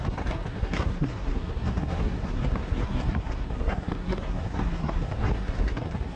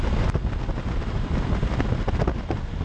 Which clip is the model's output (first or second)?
first